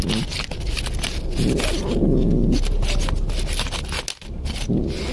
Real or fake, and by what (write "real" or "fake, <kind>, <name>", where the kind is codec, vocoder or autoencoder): real